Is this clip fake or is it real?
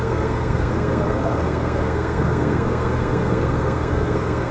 fake